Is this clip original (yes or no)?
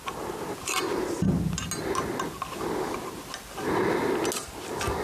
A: yes